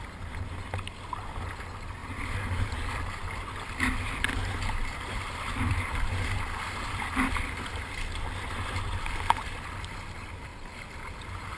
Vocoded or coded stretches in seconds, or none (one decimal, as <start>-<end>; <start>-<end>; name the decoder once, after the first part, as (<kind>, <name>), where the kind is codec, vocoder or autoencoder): 2.0-3.0 (vocoder, BigVGAN v2); 4.4-8.1